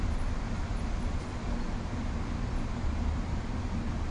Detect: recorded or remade recorded